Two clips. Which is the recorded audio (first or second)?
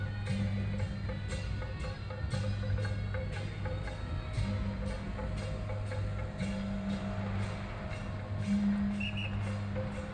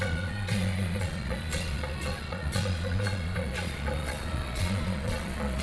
first